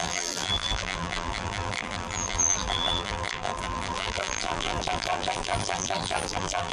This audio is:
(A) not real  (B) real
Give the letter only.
A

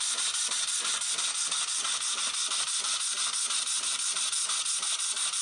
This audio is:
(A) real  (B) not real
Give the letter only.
B